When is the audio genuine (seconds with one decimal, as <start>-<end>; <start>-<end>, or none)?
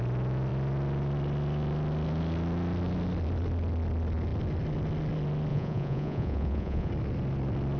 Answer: 0.0-5.5; 6.9-7.8